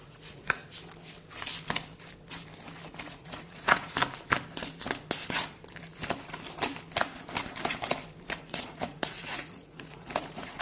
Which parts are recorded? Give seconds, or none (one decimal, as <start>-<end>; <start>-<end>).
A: 0.6-3.0; 4.0-8.4